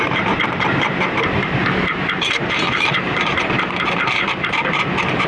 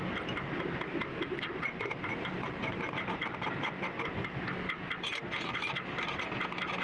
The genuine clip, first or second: second